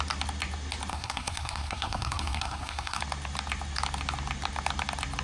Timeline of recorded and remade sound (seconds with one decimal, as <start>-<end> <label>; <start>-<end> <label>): 0.0-0.9 recorded; 0.9-3.0 remade; 3.0-5.2 recorded